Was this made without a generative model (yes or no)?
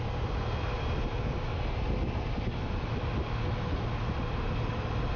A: yes